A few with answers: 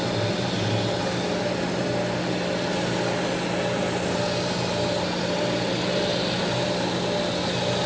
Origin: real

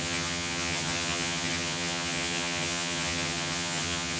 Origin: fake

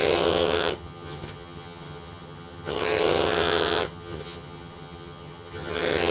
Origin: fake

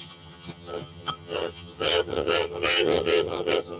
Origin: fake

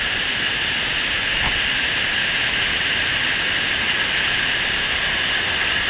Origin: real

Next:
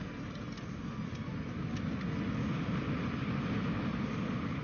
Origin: real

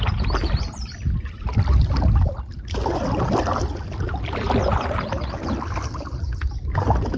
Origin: real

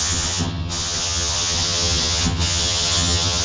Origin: fake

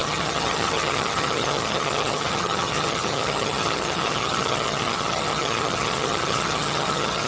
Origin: fake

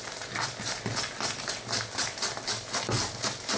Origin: real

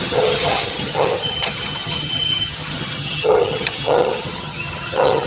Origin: fake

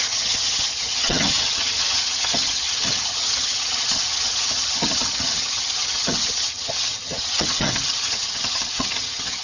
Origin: fake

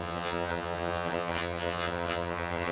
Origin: fake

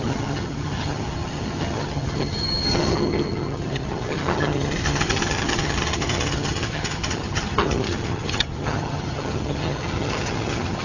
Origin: fake